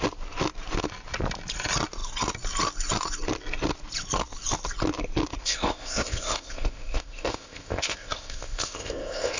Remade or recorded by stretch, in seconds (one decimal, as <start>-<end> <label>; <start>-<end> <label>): 0.0-5.4 recorded; 5.4-9.4 remade